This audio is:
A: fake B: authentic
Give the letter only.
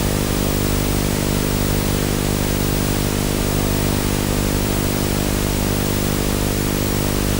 B